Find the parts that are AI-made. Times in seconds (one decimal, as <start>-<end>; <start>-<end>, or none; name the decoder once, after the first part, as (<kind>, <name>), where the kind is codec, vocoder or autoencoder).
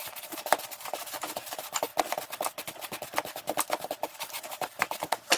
0.0-1.9 (vocoder, BigVGAN v2); 4.4-5.4